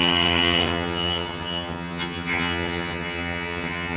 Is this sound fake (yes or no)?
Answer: yes